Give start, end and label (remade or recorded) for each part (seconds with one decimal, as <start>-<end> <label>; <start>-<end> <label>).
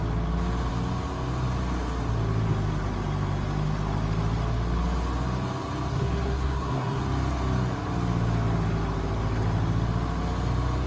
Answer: 0.0-5.9 recorded; 5.9-7.0 remade; 7.0-10.9 recorded